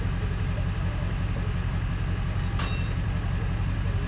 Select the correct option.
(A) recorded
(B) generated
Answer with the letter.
A